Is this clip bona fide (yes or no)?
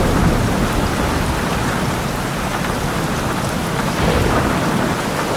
yes